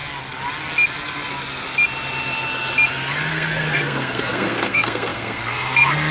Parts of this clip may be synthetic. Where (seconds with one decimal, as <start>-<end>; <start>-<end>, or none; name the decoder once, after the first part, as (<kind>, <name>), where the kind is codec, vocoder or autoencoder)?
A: 3.3-6.1 (codec, SNAC)